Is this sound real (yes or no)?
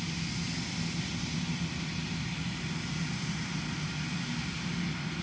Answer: yes